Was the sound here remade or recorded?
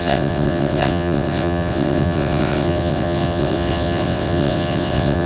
remade